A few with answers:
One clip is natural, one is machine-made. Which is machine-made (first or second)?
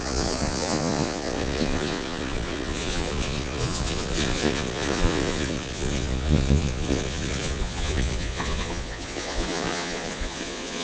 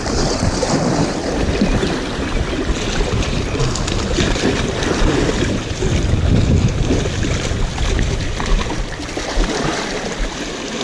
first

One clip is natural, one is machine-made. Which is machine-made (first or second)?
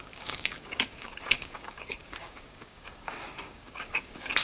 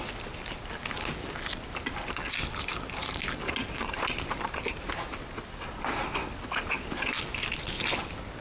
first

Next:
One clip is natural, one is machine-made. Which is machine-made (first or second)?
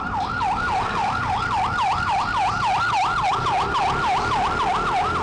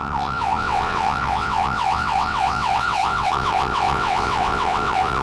second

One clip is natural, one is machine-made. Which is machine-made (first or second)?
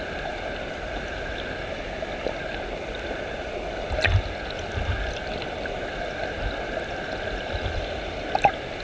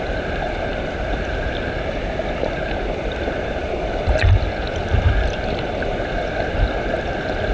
second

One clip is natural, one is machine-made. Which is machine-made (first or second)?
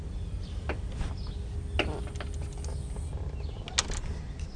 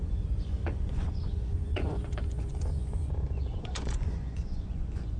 second